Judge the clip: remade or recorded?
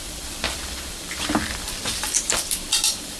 remade